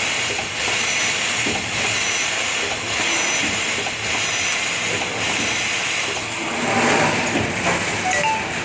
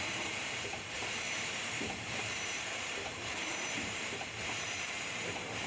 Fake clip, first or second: second